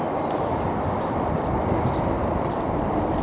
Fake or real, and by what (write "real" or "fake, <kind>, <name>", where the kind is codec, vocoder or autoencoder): real